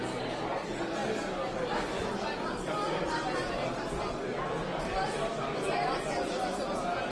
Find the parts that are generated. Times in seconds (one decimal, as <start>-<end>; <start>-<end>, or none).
none

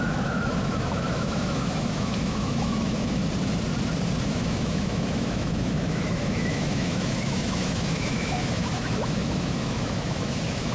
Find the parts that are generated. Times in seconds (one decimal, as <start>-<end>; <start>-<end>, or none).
0.0-3.2; 4.3-10.7